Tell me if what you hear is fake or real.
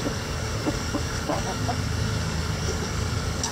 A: fake